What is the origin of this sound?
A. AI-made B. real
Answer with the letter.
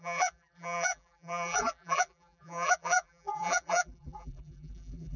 A